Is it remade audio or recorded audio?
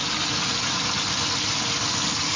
recorded